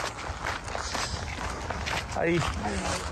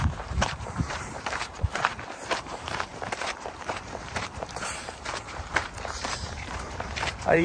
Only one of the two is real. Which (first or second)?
first